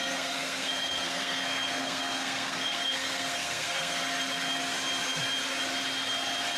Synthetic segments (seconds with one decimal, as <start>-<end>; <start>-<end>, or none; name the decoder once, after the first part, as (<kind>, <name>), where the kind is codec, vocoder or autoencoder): 0.0-4.0 (codec, SNAC)